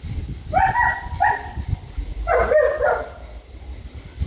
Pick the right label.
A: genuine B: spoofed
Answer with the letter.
A